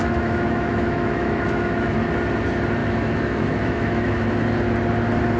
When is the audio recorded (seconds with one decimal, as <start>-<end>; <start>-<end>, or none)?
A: 2.0-2.8; 4.3-5.4